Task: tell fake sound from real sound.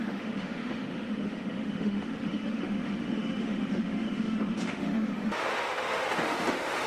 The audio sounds fake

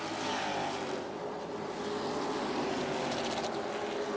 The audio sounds real